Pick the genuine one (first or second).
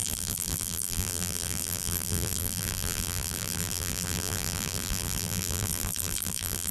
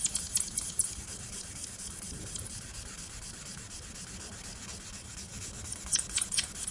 second